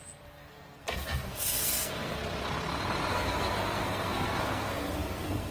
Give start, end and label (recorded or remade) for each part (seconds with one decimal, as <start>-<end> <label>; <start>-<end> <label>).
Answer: 0.0-2.2 remade; 2.2-3.1 recorded; 3.1-5.5 remade